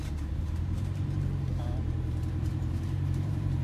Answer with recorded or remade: remade